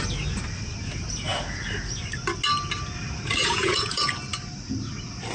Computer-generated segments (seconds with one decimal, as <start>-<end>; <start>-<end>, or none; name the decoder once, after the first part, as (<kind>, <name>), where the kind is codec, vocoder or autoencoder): 3.4-4.1 (vocoder, Vocos)